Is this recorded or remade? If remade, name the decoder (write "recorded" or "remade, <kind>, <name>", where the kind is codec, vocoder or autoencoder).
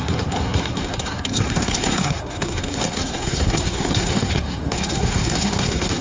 remade, codec, SNAC